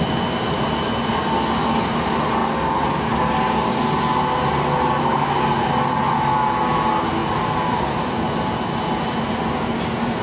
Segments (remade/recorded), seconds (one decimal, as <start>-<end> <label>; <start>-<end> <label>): 0.0-10.2 recorded